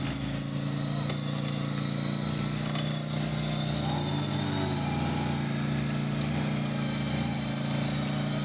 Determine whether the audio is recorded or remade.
recorded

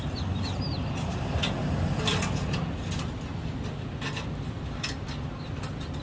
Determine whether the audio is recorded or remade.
recorded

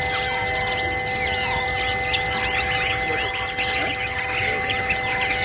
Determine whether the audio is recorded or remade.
recorded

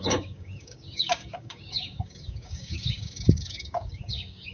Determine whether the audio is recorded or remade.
remade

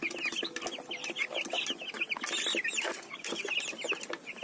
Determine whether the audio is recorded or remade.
recorded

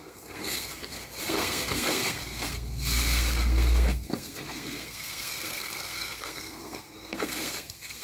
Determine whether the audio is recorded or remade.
remade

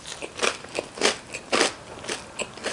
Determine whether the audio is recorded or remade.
recorded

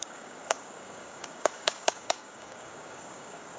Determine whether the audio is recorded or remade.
remade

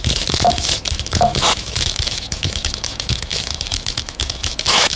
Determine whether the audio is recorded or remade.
remade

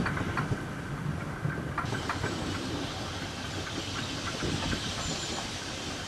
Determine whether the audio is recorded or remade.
recorded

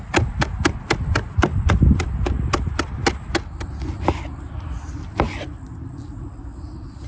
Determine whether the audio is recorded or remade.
recorded